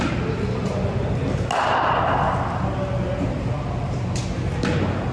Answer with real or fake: real